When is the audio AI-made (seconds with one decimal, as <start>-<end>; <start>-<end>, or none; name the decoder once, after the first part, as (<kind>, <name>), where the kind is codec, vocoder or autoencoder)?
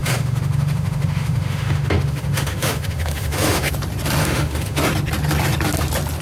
0.0-3.7 (autoencoder, DAC-VAE); 4.2-4.8